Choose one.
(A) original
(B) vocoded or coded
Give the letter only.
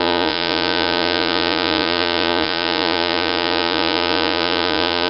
B